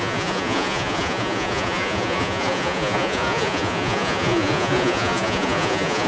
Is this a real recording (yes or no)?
no